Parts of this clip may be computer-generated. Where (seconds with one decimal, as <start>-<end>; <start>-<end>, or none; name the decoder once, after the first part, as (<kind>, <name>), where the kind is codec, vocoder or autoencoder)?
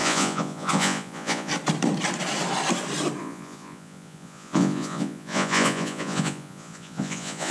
0.0-1.5 (vocoder, Vocos); 3.2-7.5